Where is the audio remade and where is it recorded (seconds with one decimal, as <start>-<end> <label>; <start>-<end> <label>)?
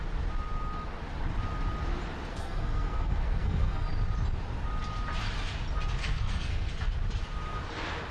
0.0-2.3 recorded; 2.3-3.9 remade; 3.9-6.0 recorded; 6.0-6.7 remade; 6.7-8.1 recorded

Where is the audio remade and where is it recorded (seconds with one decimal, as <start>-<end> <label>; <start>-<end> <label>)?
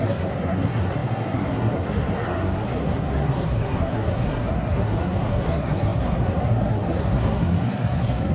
0.0-8.3 remade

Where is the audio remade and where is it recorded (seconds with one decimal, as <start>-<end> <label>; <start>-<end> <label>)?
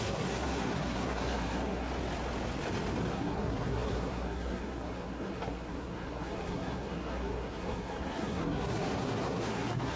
0.0-1.9 remade; 1.9-3.1 recorded; 3.1-10.0 remade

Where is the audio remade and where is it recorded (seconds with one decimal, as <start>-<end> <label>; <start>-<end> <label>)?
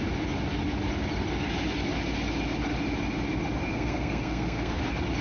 0.0-3.7 recorded; 3.7-4.8 remade; 4.8-5.2 recorded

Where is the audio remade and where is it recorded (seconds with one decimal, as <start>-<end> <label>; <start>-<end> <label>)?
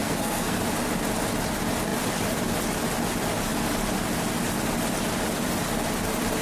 0.0-0.6 remade; 0.6-6.4 recorded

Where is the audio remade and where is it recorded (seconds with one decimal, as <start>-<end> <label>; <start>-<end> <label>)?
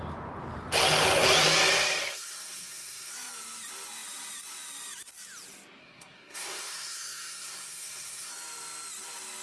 0.0-2.0 recorded; 2.0-3.1 remade; 3.1-5.8 recorded; 5.8-8.3 remade; 8.3-9.4 recorded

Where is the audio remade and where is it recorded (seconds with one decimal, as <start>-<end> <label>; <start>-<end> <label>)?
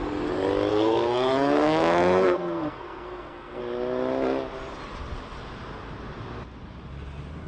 0.0-0.7 recorded; 0.7-3.6 remade; 3.6-7.5 recorded